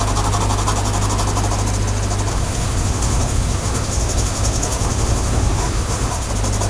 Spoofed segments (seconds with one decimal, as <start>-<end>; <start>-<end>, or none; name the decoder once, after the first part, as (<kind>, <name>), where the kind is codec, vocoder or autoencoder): 2.3-6.3 (codec, SNAC)